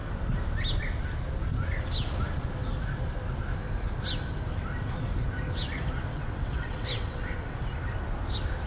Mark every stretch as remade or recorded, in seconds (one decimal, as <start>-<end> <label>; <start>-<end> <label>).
0.0-6.1 recorded; 6.1-7.8 remade; 7.8-8.7 recorded